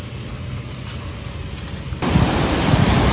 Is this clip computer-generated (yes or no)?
no